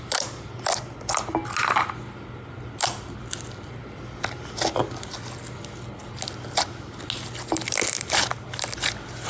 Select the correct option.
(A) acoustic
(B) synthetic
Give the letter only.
A